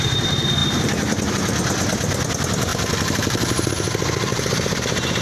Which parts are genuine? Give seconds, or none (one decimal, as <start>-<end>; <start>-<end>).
0.0-2.7; 3.7-4.3